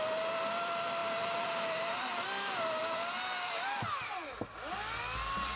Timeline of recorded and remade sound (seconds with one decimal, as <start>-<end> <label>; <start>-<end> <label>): 0.0-1.0 recorded; 1.0-4.4 remade; 4.4-5.6 recorded